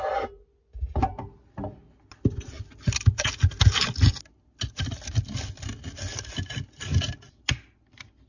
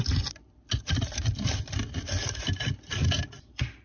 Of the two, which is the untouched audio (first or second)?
first